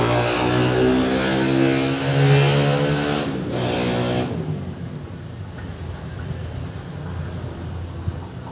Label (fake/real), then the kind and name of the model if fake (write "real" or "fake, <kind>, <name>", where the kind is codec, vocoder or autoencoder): real